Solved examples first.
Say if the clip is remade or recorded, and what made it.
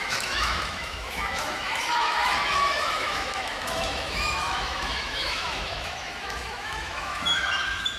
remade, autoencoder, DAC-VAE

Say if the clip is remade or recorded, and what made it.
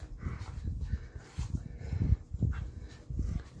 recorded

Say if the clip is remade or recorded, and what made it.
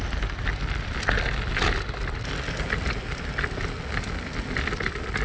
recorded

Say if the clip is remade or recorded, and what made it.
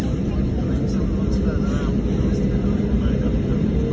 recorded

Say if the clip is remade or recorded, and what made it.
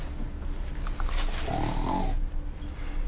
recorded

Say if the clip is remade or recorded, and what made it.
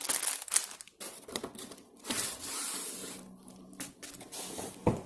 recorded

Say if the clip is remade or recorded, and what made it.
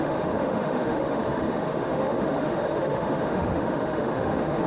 remade, autoencoder, DAC-VAE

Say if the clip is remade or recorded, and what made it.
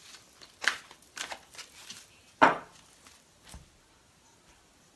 recorded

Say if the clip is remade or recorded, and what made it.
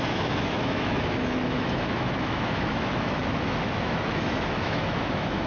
remade, autoencoder, DAC-VAE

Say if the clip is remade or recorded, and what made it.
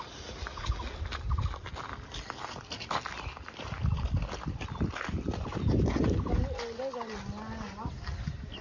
recorded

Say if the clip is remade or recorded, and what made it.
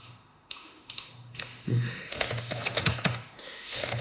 remade, autoencoder, DAC-VAE